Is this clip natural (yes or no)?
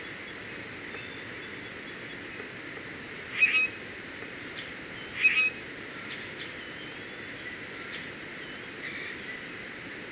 yes